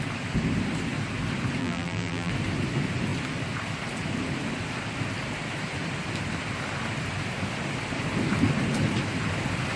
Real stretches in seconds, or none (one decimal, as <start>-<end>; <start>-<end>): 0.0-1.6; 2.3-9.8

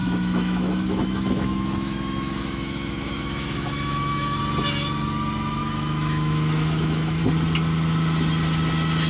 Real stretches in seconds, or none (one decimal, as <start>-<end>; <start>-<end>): 4.4-5.6; 7.2-9.1

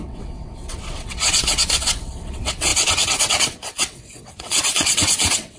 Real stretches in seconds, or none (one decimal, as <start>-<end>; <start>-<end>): none